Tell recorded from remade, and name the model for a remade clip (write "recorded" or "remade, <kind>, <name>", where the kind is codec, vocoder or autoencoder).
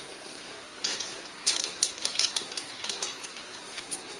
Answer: remade, codec, SNAC